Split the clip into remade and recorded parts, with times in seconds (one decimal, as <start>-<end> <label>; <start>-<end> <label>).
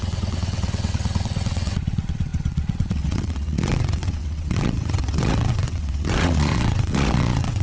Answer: 0.0-7.6 remade